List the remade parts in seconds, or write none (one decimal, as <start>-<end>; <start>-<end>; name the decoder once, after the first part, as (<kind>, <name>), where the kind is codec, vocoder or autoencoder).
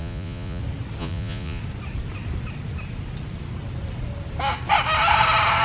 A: 0.0-0.6 (vocoder, Vocos); 1.0-1.6